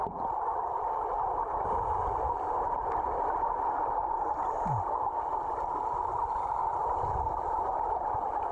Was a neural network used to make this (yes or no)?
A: no